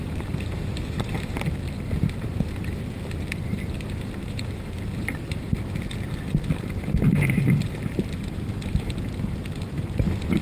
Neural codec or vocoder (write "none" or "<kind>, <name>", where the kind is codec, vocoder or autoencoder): vocoder, BigVGAN v2